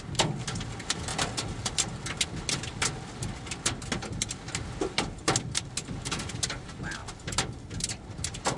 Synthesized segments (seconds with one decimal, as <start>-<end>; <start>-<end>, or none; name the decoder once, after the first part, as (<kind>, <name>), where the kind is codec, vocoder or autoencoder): none